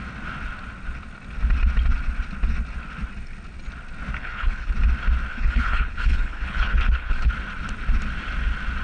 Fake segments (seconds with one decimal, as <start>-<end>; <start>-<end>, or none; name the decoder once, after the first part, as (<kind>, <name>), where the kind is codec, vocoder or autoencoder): 4.2-4.7 (codec, HILCodec); 5.3-7.3